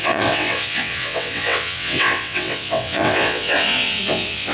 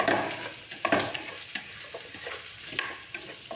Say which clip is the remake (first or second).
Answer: first